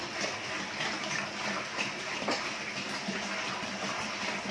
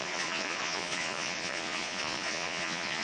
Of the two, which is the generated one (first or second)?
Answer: second